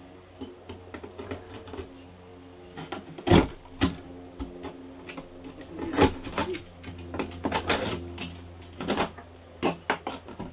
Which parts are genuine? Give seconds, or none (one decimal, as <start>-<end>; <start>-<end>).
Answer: 0.0-10.5